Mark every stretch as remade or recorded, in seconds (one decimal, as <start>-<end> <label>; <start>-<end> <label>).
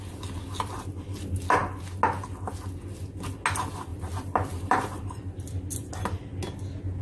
0.0-3.9 recorded; 3.9-5.9 remade; 5.9-7.0 recorded